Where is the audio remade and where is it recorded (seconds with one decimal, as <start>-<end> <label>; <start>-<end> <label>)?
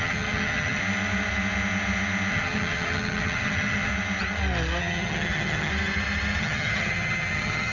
0.0-0.8 remade; 0.8-2.3 recorded; 2.3-3.9 remade; 3.9-4.8 recorded; 4.8-5.7 remade; 5.7-6.4 recorded; 6.4-7.7 remade